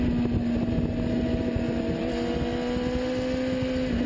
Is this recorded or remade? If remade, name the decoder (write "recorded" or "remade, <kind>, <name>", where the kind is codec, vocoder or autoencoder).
recorded